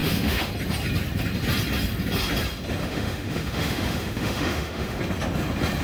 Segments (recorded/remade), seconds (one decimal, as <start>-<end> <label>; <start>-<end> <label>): 0.0-0.5 remade; 0.5-2.8 recorded; 2.8-5.0 remade; 5.0-5.8 recorded